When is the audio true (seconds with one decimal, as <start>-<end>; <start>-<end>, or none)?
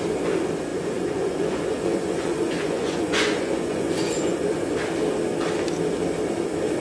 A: 0.0-0.7; 4.8-6.8